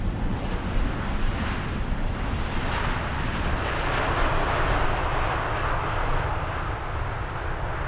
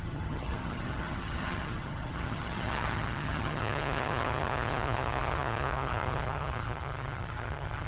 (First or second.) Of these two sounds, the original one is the first